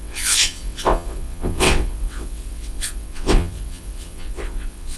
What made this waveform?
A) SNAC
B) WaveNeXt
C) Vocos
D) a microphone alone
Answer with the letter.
B